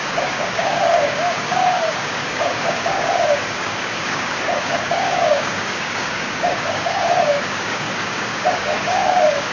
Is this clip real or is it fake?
fake